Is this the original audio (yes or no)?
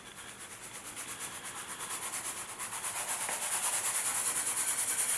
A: yes